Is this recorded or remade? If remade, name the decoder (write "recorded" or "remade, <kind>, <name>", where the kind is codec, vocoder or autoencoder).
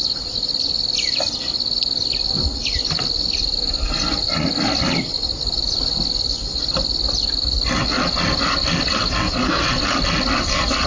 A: recorded